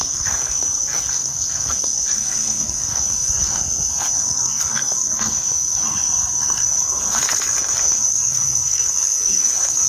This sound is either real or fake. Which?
fake